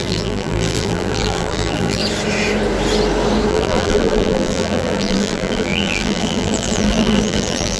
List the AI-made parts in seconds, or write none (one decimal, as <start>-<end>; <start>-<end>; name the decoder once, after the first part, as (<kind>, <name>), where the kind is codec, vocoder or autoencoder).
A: 0.0-2.0 (vocoder, BigVGAN v2); 3.5-7.8

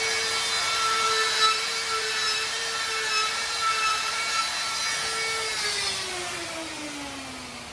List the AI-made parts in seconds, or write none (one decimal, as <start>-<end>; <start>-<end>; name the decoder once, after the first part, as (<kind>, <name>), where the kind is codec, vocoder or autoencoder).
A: 0.6-4.8 (vocoder, BigVGAN v2); 5.5-6.8